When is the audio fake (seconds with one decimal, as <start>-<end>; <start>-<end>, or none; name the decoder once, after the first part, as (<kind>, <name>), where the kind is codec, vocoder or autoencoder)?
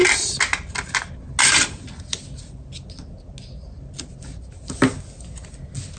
none